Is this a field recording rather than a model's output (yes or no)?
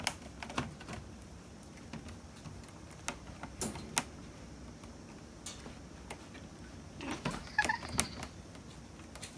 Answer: yes